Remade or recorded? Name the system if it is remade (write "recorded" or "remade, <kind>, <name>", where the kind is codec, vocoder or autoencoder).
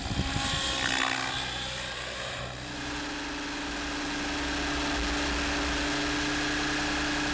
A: recorded